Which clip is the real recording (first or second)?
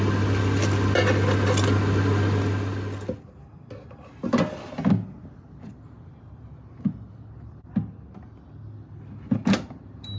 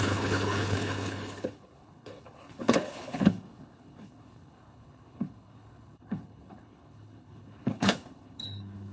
first